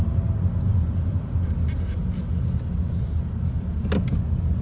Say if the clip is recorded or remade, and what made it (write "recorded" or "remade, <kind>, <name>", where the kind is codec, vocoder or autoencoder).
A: recorded